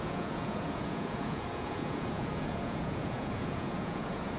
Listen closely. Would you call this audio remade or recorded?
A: remade